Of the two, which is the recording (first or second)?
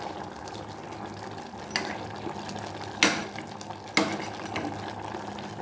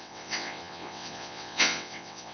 first